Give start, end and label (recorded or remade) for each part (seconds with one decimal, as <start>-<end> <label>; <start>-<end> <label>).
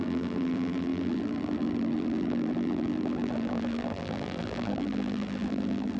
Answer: 0.0-6.0 remade